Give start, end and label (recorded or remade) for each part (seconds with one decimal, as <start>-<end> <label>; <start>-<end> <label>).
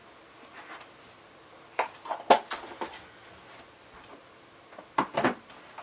0.0-5.8 recorded